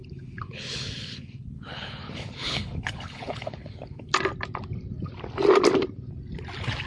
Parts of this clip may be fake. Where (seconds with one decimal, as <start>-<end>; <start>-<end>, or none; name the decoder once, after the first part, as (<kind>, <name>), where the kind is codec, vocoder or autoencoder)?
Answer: 0.0-4.1 (codec, HILCodec)